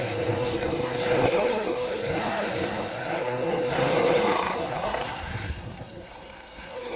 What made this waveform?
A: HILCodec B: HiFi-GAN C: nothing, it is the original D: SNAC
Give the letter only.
D